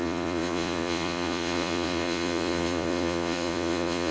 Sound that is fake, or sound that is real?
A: fake